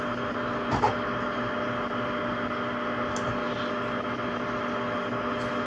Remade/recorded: recorded